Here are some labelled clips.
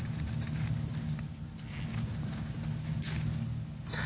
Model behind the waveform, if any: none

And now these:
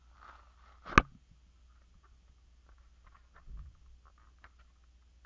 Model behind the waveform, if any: none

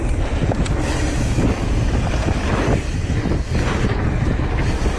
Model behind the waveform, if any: none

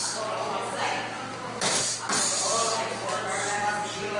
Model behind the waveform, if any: none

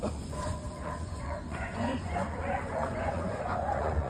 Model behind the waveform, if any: vocoder, Vocos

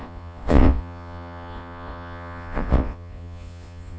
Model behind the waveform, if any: vocoder, Vocos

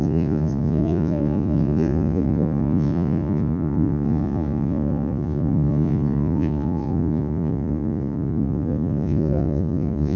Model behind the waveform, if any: vocoder, Vocos